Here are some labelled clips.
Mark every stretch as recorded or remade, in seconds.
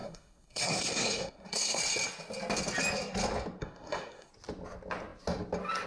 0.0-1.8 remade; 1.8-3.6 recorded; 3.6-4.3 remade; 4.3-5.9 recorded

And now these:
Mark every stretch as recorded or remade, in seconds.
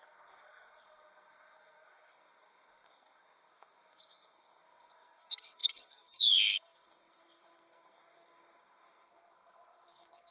0.0-10.3 remade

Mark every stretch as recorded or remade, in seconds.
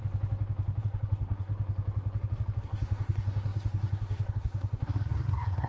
0.0-0.8 recorded; 0.8-1.5 remade; 1.5-2.6 recorded; 2.6-5.7 remade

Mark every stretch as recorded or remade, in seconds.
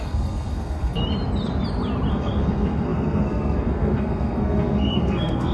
0.0-1.0 remade; 1.0-2.1 recorded; 2.1-5.5 remade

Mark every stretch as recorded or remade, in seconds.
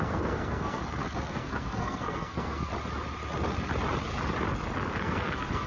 0.0-0.8 remade; 0.8-1.3 recorded; 1.3-2.7 remade; 2.7-5.0 recorded; 5.0-5.7 remade